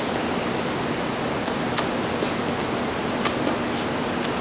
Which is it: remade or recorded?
recorded